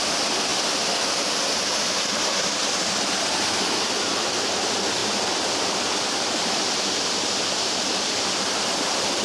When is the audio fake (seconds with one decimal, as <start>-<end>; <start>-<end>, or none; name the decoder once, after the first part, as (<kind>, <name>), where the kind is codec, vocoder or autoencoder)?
none